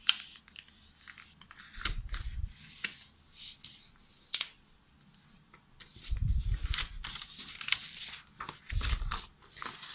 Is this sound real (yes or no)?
yes